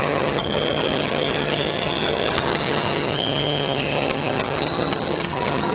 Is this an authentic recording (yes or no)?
no